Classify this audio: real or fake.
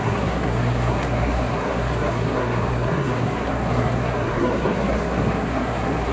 fake